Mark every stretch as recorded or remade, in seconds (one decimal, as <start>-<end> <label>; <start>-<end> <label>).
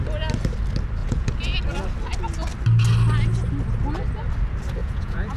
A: 0.0-1.0 recorded; 1.0-1.6 remade; 1.6-4.8 recorded; 4.8-5.4 remade